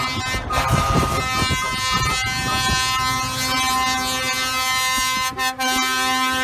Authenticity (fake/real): fake